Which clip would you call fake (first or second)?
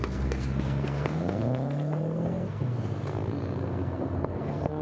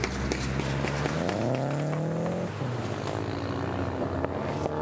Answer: first